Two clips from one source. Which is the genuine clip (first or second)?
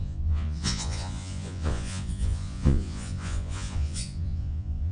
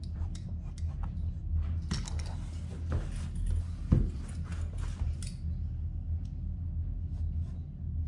second